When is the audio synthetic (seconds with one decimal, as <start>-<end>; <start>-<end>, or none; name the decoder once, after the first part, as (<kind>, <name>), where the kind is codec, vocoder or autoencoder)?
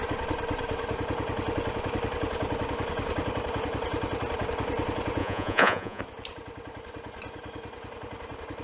5.2-6.0 (vocoder, Vocos)